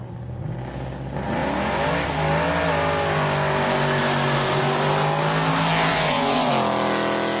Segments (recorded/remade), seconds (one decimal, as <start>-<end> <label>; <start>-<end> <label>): 0.0-5.9 recorded; 5.9-6.5 remade; 6.5-7.4 recorded

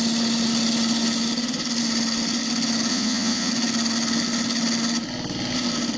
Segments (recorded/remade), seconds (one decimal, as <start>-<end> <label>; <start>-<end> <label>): 0.0-2.9 recorded; 2.9-3.5 remade; 3.5-6.0 recorded